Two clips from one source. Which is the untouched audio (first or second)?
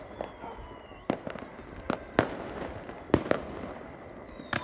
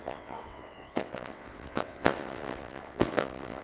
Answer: first